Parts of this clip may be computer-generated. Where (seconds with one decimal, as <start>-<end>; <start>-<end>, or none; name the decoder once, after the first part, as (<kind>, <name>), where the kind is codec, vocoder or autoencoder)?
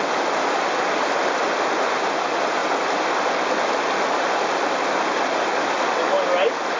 none